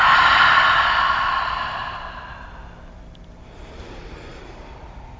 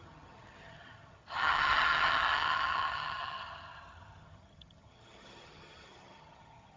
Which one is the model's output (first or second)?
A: second